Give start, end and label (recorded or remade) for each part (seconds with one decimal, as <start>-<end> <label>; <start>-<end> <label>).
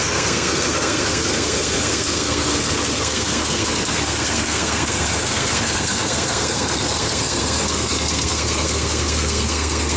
0.0-10.0 remade